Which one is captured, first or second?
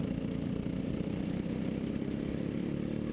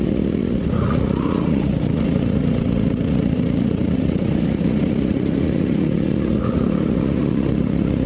first